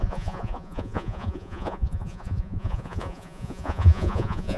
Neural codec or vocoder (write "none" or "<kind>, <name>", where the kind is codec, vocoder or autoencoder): vocoder, Vocos